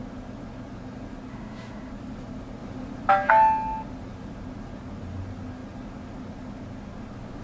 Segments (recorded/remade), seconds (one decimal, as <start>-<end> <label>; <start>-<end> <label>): 0.0-1.3 recorded; 1.3-1.9 remade; 1.9-7.4 recorded